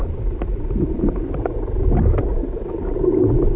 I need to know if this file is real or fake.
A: real